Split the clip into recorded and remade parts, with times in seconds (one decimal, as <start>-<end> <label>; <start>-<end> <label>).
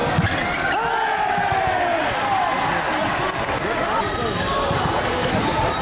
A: 0.0-5.8 recorded